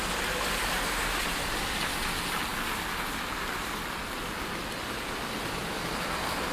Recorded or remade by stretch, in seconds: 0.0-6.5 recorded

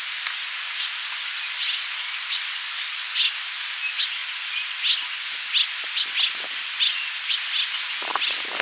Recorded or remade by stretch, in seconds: 0.0-8.6 recorded

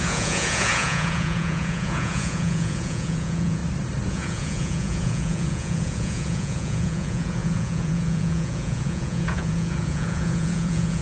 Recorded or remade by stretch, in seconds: 0.0-3.6 remade; 3.6-4.1 recorded; 4.1-11.0 remade

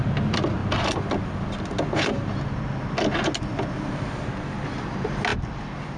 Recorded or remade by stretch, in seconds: 0.0-6.0 recorded

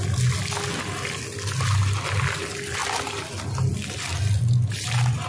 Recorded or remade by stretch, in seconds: 0.0-5.3 recorded